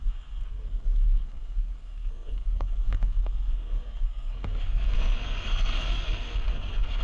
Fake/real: fake